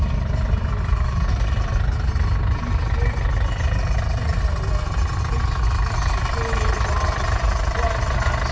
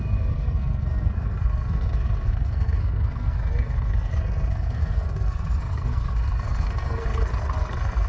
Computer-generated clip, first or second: second